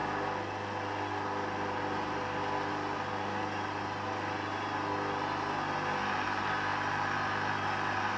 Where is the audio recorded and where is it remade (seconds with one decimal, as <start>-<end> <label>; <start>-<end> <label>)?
0.0-8.2 recorded